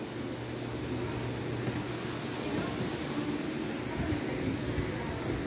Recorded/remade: recorded